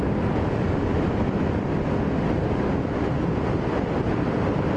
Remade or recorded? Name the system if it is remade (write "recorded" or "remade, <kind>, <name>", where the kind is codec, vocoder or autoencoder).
recorded